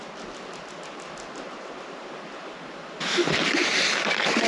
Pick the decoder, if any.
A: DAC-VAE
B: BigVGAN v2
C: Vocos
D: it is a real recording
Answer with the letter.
D